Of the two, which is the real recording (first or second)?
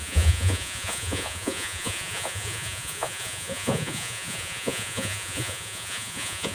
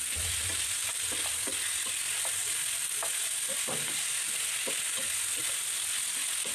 second